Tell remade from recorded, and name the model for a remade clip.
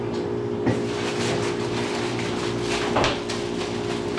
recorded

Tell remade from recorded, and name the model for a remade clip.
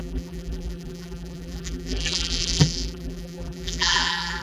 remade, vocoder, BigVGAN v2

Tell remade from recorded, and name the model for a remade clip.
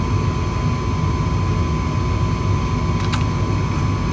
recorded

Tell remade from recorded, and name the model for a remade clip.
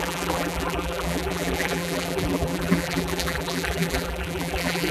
remade, vocoder, BigVGAN v2